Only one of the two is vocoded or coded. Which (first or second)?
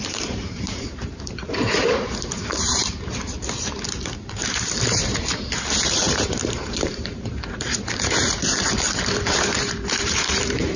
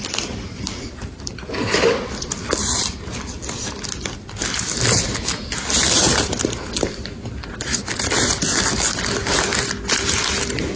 first